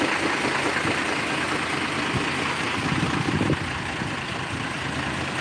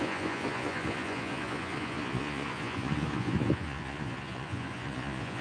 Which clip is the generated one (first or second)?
second